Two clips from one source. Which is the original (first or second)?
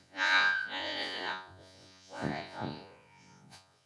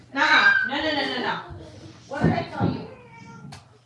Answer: second